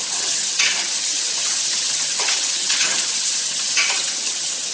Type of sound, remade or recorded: remade